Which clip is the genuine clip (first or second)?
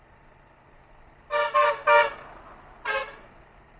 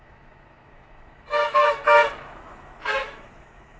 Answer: first